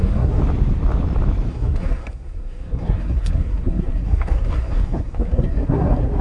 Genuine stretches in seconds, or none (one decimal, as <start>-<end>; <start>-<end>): 0.4-1.5